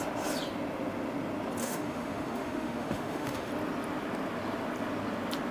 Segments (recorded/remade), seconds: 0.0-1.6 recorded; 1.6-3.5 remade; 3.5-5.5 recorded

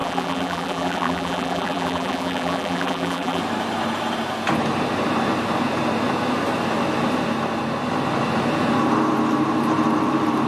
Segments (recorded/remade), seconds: 0.0-3.4 remade; 3.4-10.5 recorded

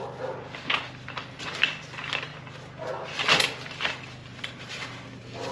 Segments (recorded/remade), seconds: 0.0-4.2 recorded; 4.2-5.0 remade; 5.0-5.5 recorded

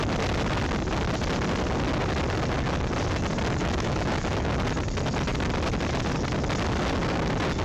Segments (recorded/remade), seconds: 0.0-3.6 recorded; 3.6-4.5 remade; 4.5-7.6 recorded

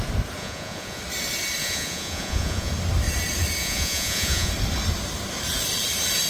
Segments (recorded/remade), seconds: 0.0-0.4 recorded; 0.4-1.0 remade; 1.0-1.6 recorded; 1.6-2.7 remade; 2.7-3.6 recorded; 3.6-4.5 remade; 4.5-6.3 recorded

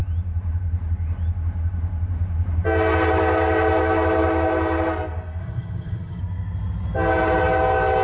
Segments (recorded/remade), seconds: 0.0-5.4 recorded; 5.4-6.2 remade; 6.2-8.0 recorded

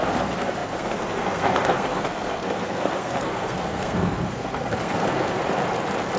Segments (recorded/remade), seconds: 0.0-5.4 remade; 5.4-6.2 recorded